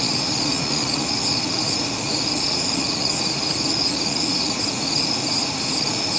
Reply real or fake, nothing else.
fake